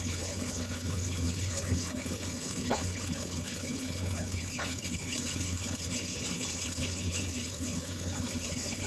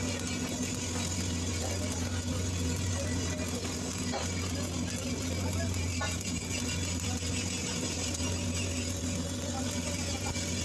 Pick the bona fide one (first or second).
second